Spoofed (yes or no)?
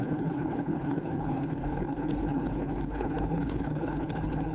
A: yes